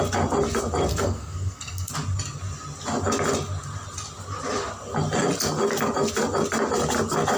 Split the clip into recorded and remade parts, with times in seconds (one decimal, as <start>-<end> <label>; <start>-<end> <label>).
0.0-0.9 recorded; 0.9-1.9 remade; 1.9-7.4 recorded